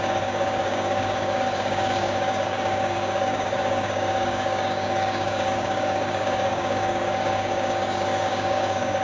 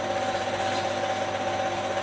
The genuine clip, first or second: second